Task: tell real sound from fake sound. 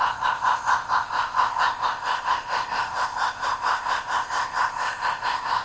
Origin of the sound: fake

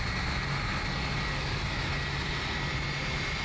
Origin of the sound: real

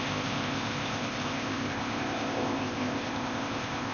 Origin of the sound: fake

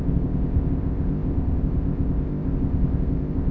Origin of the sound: fake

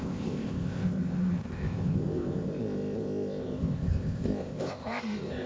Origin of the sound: fake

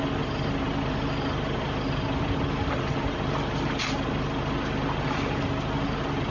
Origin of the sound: real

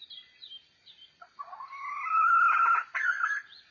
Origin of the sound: real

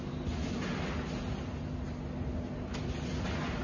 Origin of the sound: real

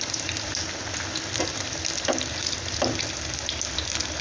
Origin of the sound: real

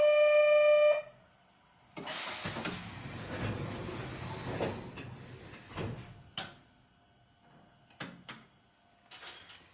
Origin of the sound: real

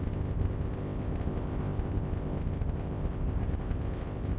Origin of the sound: fake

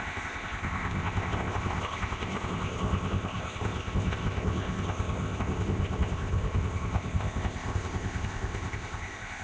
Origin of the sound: fake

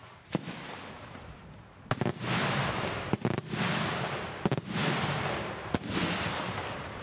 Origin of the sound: real